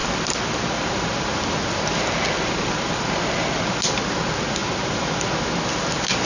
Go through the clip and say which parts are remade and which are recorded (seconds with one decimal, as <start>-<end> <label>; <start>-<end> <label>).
0.0-6.3 recorded